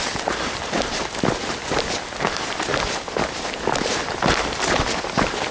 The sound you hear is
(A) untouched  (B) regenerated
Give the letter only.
A